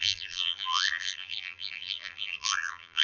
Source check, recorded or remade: remade